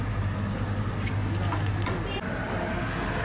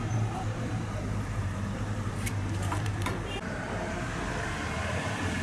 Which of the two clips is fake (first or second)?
second